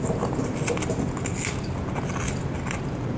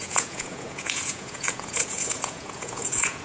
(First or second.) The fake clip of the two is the second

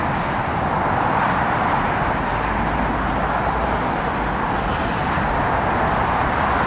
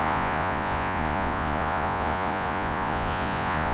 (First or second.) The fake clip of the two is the second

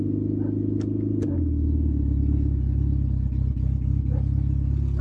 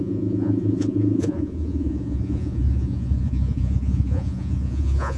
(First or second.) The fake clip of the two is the second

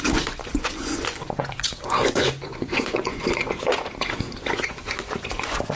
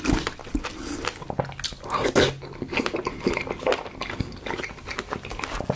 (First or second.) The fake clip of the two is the first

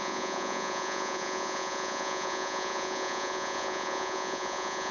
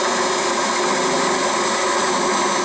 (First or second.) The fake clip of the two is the first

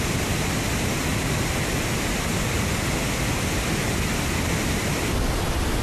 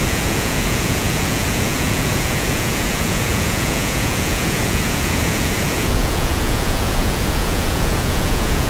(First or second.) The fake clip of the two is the second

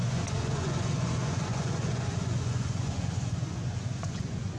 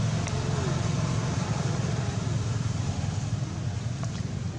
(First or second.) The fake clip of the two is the first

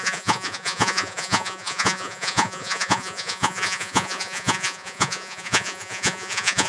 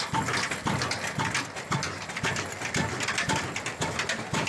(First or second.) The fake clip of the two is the first